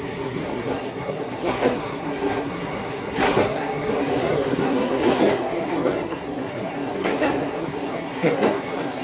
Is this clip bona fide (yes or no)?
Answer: no